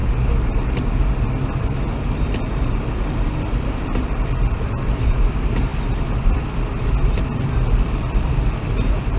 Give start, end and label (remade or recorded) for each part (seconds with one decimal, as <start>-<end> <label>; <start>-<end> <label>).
0.0-1.6 recorded; 1.6-5.7 remade; 5.7-6.2 recorded; 6.2-9.2 remade

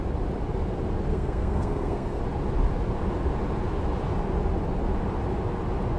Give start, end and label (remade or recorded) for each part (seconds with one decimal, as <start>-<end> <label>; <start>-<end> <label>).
0.0-1.1 recorded; 1.1-2.2 remade; 2.2-6.0 recorded

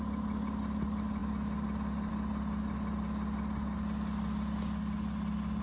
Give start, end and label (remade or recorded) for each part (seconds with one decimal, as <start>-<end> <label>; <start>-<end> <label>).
0.0-5.6 recorded

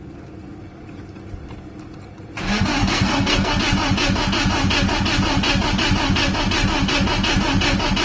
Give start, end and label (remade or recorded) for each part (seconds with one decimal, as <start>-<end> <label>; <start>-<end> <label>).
0.0-2.8 recorded; 2.8-3.6 remade; 3.6-8.0 recorded